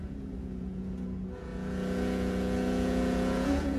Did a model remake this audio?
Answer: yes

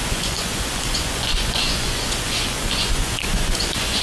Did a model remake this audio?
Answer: yes